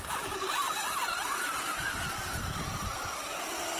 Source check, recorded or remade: remade